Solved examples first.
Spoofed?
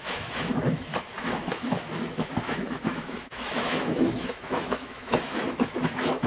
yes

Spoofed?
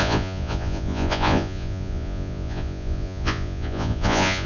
yes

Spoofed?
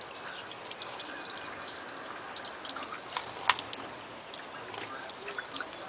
no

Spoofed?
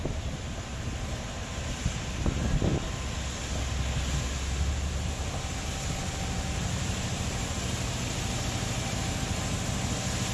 no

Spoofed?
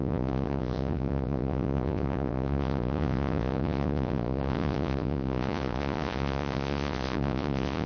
yes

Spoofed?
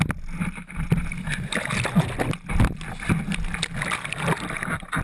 no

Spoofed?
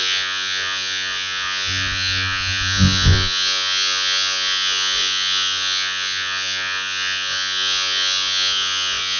yes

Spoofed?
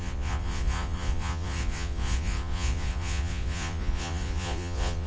yes